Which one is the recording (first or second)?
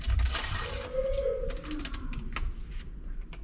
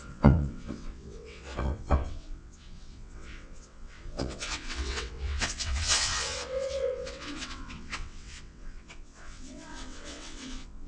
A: first